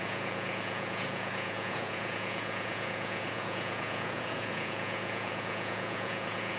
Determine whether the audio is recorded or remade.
remade